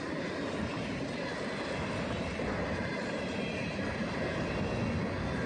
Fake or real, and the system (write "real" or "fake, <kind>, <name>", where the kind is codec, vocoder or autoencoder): real